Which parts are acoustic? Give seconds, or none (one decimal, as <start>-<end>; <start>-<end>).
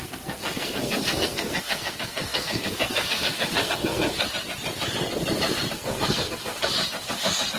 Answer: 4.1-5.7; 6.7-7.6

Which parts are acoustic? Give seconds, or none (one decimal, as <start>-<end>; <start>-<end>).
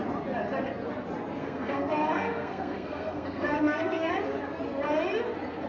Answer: 0.0-1.4; 4.1-5.7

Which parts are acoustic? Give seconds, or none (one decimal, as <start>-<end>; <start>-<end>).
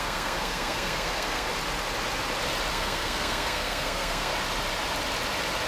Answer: 1.5-2.7; 4.3-5.7